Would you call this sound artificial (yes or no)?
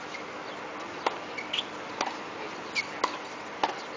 no